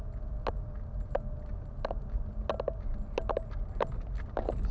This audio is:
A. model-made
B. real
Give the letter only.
B